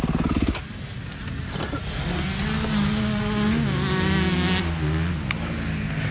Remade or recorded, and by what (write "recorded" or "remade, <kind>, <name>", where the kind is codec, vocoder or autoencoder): recorded